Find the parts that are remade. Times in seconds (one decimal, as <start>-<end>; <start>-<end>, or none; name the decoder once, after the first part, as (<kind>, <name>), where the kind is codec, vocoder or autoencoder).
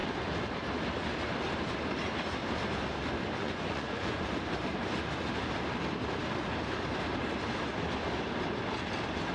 3.4-4.3 (vocoder, Vocos)